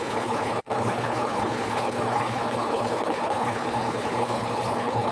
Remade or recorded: remade